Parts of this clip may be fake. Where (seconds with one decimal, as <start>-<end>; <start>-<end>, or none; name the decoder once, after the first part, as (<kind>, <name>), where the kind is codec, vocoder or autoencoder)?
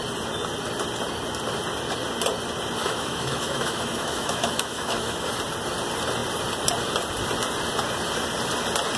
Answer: 2.8-5.3 (autoencoder, DAC-VAE)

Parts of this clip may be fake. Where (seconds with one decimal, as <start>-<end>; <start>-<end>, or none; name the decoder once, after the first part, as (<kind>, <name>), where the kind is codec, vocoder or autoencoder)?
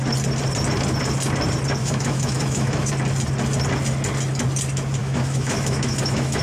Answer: 1.8-2.9 (autoencoder, DAC-VAE); 5.0-6.4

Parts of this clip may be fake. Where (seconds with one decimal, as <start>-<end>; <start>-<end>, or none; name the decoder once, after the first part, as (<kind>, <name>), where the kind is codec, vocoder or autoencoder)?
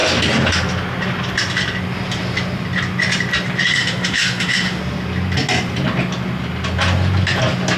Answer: 3.7-4.8 (autoencoder, DAC-VAE)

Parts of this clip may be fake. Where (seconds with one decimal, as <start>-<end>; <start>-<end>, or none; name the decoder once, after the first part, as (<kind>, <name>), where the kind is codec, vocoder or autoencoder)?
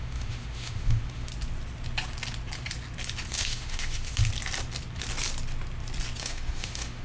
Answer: 0.0-1.3 (autoencoder, DAC-VAE); 3.3-4.2; 6.2-7.0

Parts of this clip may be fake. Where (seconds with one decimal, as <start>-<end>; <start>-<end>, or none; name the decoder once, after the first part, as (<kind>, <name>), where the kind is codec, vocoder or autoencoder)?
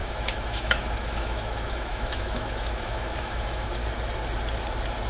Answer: 0.0-3.8 (autoencoder, DAC-VAE)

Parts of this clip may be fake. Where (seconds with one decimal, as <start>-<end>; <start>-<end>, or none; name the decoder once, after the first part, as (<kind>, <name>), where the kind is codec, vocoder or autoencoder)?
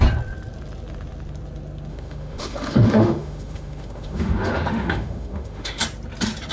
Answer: 1.9-5.8 (autoencoder, DAC-VAE)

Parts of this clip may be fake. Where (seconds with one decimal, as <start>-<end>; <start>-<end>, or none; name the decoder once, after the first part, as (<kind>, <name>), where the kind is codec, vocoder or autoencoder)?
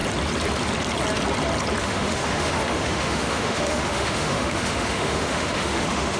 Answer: 1.8-6.2 (autoencoder, DAC-VAE)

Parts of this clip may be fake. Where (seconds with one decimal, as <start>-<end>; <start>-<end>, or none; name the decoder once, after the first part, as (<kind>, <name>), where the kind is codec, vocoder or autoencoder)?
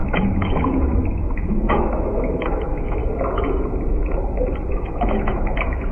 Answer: 0.0-3.0 (autoencoder, DAC-VAE); 4.7-5.9